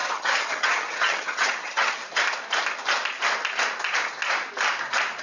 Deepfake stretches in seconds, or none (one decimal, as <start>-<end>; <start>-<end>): 0.0-2.0